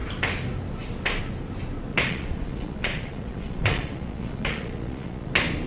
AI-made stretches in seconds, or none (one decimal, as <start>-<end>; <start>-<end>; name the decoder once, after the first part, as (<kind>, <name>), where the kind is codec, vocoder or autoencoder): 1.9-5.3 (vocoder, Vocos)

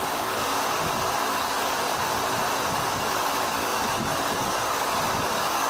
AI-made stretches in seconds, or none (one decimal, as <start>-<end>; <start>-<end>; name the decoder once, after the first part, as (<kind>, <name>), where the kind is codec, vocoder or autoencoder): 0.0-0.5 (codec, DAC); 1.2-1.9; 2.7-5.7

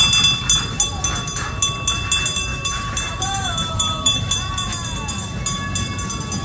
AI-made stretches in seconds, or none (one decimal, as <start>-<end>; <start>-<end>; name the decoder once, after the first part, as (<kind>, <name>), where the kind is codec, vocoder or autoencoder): 2.5-4.2 (vocoder, BigVGAN v2)

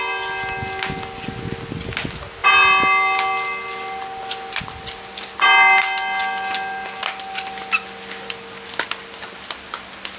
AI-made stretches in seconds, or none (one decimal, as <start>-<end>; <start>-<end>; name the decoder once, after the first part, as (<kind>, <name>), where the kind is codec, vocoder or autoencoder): none